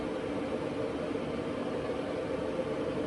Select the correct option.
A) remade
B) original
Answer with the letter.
B